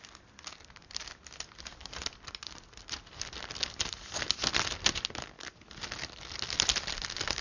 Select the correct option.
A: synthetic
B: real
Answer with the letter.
B